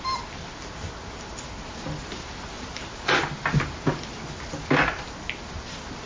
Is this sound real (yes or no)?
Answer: yes